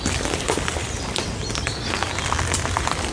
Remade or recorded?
remade